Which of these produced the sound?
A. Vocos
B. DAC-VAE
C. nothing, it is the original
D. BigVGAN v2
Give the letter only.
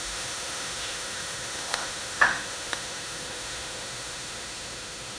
B